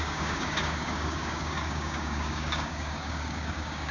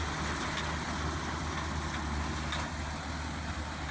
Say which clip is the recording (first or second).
second